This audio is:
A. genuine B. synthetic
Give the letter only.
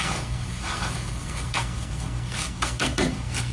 B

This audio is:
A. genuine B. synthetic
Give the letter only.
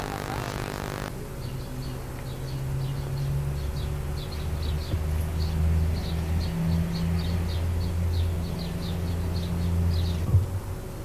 A